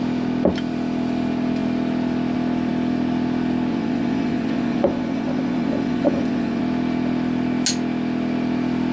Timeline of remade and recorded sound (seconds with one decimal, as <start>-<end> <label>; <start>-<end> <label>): 0.0-3.7 recorded; 3.7-6.6 remade; 6.6-8.9 recorded